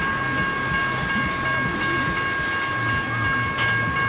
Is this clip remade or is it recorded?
recorded